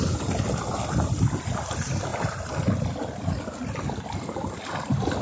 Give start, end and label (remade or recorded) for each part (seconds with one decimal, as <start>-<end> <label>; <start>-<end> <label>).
0.0-5.2 recorded